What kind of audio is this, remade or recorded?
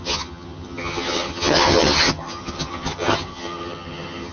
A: remade